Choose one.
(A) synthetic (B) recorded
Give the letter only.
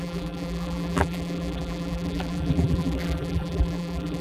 A